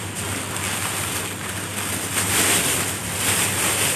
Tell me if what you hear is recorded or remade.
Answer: recorded